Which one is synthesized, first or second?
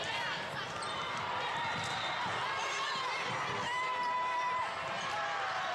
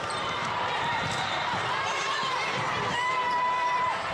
second